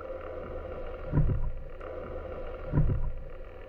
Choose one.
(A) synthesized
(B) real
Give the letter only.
B